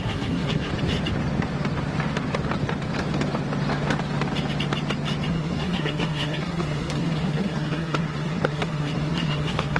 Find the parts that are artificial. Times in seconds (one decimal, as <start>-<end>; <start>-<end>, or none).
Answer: 0.0-0.7; 5.3-9.8